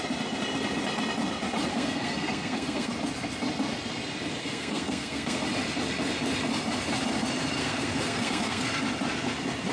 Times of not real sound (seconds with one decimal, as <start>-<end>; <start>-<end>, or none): 1.7-2.9; 4.4-5.4; 7.6-8.6